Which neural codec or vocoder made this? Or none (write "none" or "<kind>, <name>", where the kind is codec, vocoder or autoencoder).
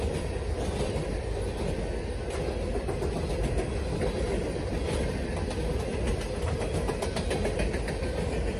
none